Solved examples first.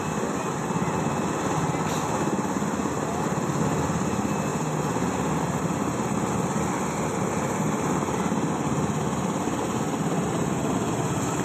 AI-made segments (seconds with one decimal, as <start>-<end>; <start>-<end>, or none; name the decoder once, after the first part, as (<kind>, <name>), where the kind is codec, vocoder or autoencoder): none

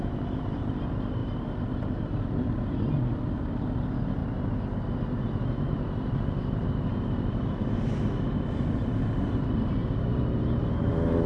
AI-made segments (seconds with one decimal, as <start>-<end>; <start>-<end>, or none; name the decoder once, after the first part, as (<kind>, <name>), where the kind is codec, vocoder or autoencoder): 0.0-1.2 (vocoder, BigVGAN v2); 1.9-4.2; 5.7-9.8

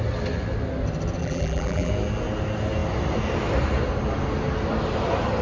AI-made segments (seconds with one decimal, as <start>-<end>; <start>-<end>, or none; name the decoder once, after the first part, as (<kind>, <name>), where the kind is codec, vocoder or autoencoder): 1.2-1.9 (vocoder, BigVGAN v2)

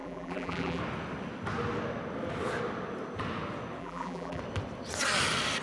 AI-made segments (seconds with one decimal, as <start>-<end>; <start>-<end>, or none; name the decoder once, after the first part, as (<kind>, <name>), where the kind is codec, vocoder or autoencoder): 0.0-0.8 (vocoder, BigVGAN v2); 3.8-4.4

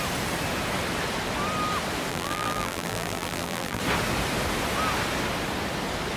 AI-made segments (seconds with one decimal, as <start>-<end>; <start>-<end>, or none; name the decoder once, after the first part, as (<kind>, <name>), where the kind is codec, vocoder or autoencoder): 2.1-3.8 (vocoder, BigVGAN v2)

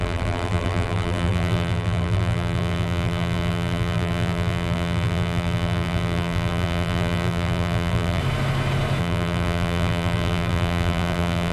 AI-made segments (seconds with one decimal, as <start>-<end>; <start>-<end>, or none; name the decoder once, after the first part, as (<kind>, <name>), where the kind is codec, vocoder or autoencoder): 0.0-8.2 (vocoder, BigVGAN v2); 9.0-11.5

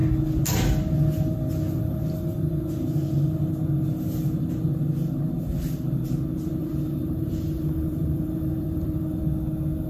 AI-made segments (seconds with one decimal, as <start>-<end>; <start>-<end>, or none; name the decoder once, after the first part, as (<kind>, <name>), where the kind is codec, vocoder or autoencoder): 6.6-9.2 (vocoder, BigVGAN v2)